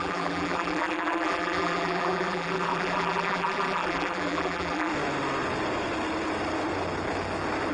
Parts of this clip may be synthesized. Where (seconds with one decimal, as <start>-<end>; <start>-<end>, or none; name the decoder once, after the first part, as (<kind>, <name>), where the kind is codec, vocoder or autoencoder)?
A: 0.0-4.9 (vocoder, BigVGAN v2)

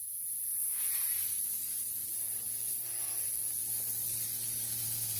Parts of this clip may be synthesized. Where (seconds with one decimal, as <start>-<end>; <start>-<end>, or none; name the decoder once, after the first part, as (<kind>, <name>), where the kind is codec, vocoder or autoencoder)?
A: 0.5-1.3 (vocoder, BigVGAN v2)

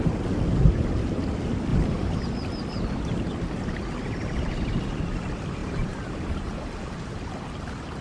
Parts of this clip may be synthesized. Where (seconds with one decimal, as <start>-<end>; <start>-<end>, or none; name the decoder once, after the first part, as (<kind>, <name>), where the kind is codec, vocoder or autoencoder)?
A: 1.7-2.2 (vocoder, BigVGAN v2); 5.6-6.7

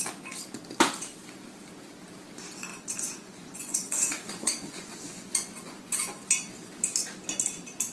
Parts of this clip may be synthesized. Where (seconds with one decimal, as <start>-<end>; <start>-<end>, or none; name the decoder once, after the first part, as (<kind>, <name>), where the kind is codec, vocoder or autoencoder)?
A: 2.7-6.5 (vocoder, Vocos)

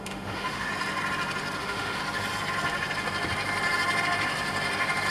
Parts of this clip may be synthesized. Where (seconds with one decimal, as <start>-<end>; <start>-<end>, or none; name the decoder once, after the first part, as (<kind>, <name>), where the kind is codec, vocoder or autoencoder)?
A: 0.0-0.7 (autoencoder, DAC-VAE); 1.6-2.0

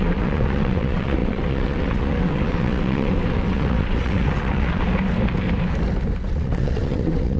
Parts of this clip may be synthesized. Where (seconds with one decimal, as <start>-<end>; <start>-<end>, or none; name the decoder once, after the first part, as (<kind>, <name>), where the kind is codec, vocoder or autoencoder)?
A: 0.0-4.8 (vocoder, WaveNeXt); 6.3-7.4